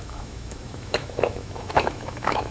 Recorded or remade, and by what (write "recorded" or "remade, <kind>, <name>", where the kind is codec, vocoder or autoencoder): remade, autoencoder, DAC-VAE